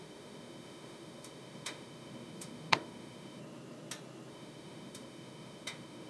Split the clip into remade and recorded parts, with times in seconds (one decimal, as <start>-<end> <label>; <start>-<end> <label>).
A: 0.0-3.4 remade; 3.4-4.3 recorded; 4.3-6.1 remade